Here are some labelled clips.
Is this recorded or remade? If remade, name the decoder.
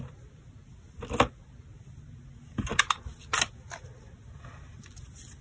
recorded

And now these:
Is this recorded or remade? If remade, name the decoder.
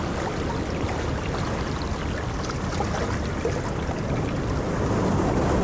recorded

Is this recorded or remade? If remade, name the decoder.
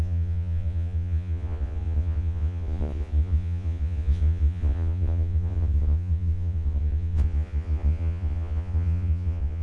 remade, vocoder, Vocos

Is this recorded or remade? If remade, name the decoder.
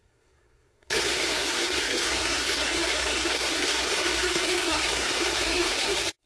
remade, codec, SNAC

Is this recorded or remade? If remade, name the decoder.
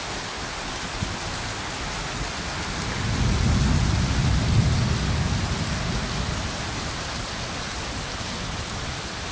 recorded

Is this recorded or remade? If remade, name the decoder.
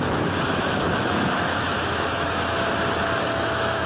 remade, autoencoder, DAC-VAE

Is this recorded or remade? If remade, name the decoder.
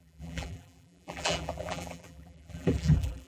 remade, vocoder, BigVGAN v2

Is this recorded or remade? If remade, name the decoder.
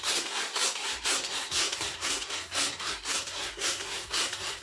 remade, codec, SNAC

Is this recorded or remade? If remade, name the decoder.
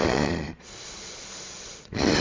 remade, vocoder, Vocos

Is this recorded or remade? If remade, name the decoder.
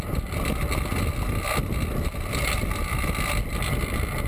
recorded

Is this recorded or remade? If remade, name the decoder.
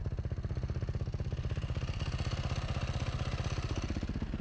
recorded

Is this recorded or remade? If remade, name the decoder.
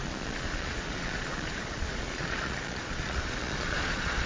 remade, vocoder, Vocos